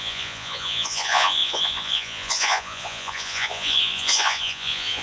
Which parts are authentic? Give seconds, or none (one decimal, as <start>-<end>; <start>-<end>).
none